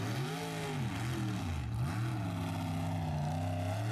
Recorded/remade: recorded